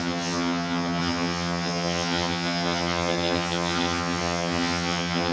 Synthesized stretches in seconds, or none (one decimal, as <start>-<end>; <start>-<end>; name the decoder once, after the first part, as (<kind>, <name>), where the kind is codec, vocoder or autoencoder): 0.0-5.3 (vocoder, HiFi-GAN)